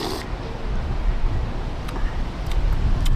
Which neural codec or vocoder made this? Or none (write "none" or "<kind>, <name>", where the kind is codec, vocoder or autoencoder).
none